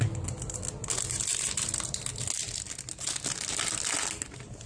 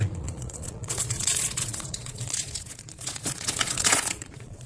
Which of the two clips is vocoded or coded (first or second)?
second